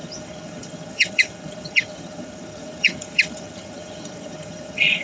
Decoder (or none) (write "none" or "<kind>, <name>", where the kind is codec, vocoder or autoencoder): vocoder, HiFi-GAN